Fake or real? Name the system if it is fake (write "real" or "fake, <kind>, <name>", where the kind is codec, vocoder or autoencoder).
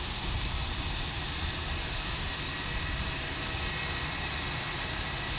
real